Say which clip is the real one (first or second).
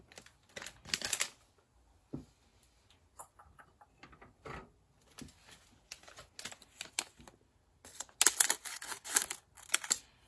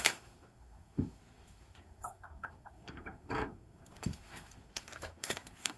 first